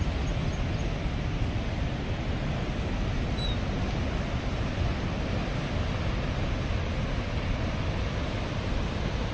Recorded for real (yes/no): yes